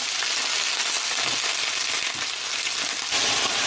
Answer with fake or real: real